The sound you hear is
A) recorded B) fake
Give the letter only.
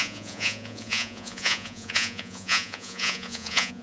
B